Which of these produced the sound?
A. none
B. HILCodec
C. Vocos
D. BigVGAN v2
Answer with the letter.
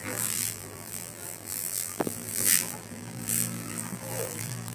D